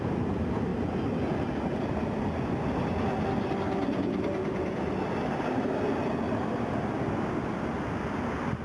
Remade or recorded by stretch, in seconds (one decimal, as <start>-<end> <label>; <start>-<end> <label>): 0.0-8.6 recorded